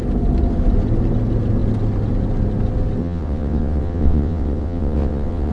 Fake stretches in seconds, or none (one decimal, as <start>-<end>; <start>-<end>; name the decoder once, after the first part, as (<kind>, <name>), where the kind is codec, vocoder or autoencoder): 3.0-5.5 (vocoder, WaveNeXt)